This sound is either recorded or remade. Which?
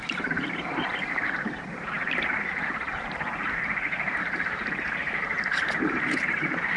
remade